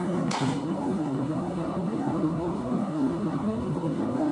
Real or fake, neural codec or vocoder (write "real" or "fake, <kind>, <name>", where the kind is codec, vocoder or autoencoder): fake, codec, SNAC